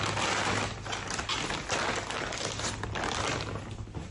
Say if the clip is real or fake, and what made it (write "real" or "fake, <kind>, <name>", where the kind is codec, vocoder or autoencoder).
real